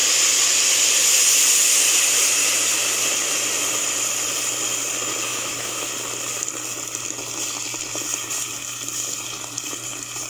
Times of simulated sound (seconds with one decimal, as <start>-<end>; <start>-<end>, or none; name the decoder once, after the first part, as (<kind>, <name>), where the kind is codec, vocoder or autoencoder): 5.2-5.9 (autoencoder, DAC-VAE)